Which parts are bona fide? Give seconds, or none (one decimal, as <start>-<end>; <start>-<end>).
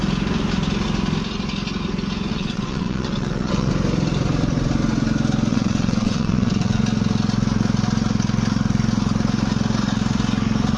0.0-2.3; 3.7-5.5; 6.8-10.8